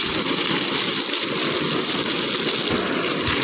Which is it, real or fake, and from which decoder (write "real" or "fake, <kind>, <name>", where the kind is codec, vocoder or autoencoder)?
real